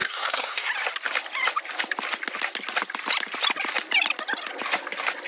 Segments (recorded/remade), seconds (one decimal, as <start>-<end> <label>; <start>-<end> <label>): 0.0-0.7 remade; 0.7-5.3 recorded